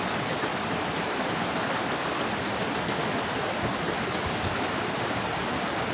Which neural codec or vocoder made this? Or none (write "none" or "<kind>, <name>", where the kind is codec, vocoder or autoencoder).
none